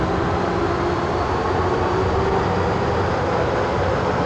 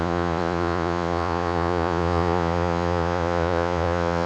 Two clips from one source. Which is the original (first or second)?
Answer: first